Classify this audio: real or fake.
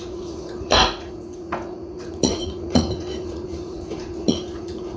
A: fake